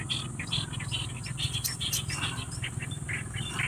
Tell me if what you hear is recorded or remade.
recorded